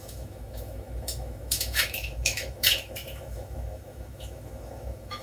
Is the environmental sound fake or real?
fake